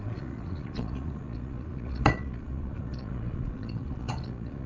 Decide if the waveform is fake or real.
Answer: fake